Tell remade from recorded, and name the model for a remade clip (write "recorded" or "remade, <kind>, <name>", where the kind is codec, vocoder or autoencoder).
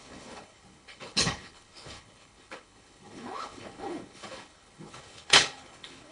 remade, codec, HILCodec